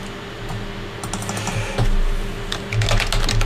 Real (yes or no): yes